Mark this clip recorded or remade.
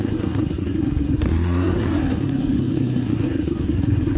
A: remade